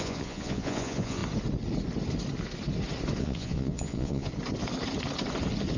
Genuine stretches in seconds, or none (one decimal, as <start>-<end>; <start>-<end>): 1.2-3.2; 4.3-5.8

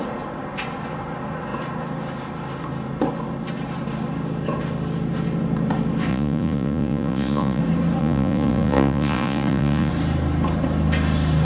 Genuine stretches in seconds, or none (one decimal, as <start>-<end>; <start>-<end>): 0.0-6.1; 7.6-8.0; 9.9-11.4